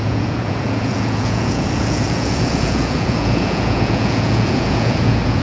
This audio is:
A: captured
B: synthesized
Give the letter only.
B